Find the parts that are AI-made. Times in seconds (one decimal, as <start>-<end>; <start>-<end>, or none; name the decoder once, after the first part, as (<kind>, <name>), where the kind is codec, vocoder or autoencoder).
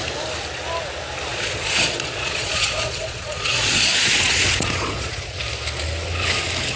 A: 1.3-5.4 (vocoder, Vocos)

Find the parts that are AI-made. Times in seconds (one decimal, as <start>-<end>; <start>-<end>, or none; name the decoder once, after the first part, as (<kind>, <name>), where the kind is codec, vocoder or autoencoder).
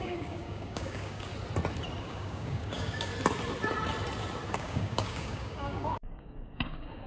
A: 0.0-1.3 (codec, DAC); 2.0-3.1; 4.5-7.1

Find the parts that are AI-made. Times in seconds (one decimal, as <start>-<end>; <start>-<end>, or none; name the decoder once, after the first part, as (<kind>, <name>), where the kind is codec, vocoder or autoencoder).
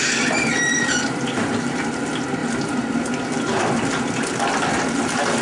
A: 0.5-1.8 (vocoder, BigVGAN v2); 2.4-4.8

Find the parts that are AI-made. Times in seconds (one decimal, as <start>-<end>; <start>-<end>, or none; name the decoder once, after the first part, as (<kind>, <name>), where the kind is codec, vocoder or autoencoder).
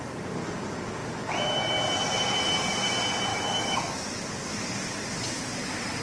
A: 3.3-4.2 (autoencoder, DAC-VAE)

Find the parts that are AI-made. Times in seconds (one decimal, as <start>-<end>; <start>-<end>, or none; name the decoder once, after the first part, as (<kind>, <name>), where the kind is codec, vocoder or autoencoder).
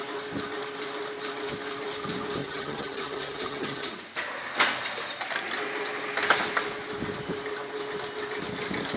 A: 2.4-3.9 (vocoder, HiFi-GAN)